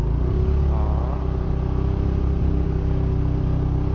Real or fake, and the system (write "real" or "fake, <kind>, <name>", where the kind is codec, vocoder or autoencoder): real